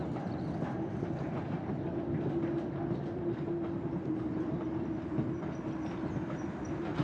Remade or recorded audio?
recorded